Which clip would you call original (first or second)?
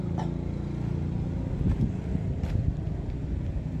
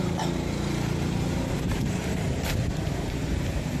first